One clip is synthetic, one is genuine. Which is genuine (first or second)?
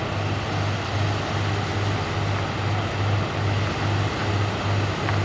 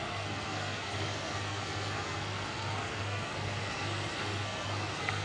first